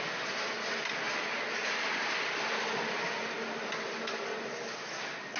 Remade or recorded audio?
recorded